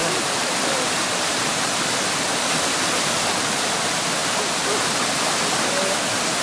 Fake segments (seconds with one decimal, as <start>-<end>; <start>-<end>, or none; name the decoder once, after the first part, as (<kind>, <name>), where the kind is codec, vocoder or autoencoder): 0.0-1.7 (vocoder, BigVGAN v2)